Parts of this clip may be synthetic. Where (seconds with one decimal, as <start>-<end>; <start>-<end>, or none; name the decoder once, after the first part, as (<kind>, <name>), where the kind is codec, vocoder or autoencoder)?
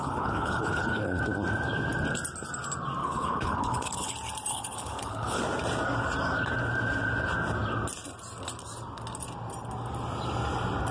0.0-1.2 (codec, HILCodec); 3.0-4.1; 4.5-5.4